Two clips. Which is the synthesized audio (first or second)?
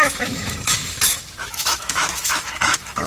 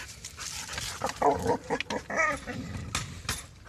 first